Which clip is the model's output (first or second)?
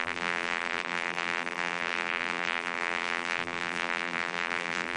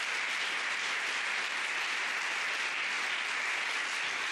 first